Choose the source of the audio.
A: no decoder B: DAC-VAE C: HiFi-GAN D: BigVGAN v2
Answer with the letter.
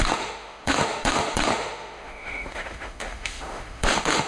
B